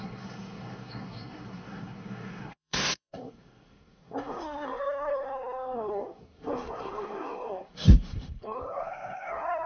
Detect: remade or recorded remade